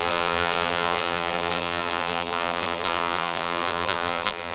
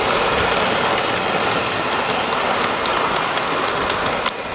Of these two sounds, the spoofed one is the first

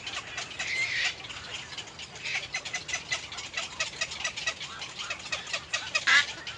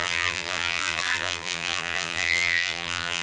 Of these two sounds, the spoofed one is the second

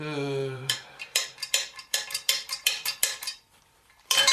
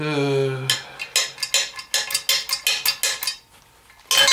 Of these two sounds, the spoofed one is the first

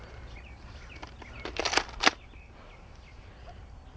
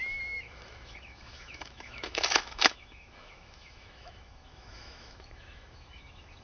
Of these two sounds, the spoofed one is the second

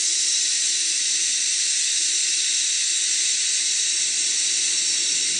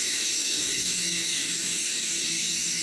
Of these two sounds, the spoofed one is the second